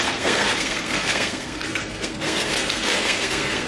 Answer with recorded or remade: remade